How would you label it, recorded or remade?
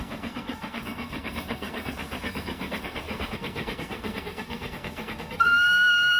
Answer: remade